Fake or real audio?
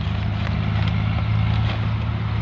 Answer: real